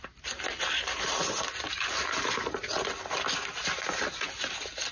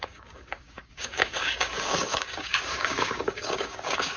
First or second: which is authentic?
first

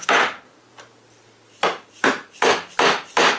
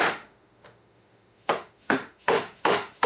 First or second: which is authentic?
first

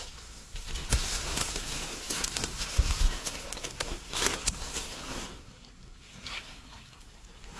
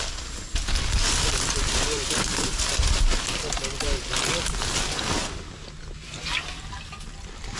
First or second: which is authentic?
second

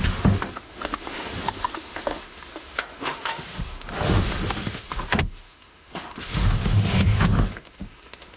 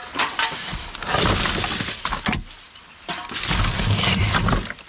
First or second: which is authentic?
second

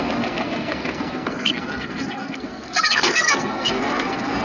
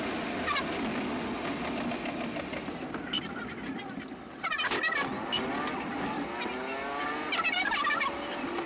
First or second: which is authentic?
second